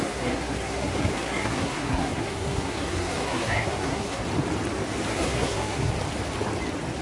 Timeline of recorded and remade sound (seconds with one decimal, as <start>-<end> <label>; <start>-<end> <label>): 0.0-4.2 remade; 4.2-5.1 recorded; 5.1-5.9 remade; 5.9-7.0 recorded